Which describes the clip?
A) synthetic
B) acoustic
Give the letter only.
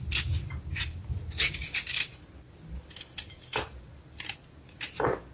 B